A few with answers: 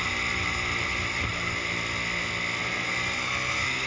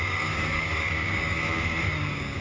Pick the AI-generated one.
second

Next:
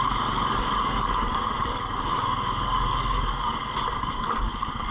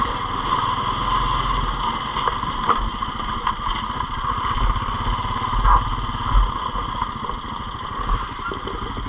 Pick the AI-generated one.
first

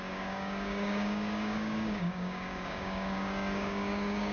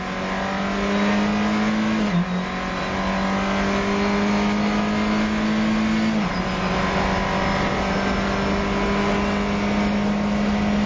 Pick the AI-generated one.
first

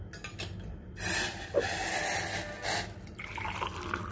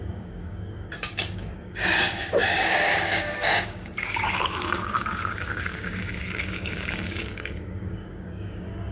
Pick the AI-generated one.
second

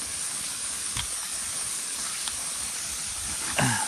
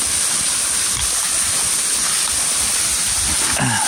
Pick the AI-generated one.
first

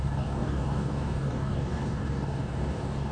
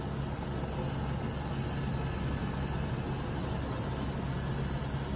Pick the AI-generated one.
first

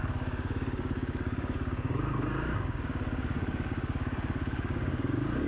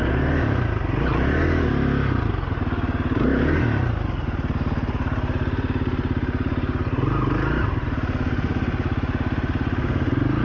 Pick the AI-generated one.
first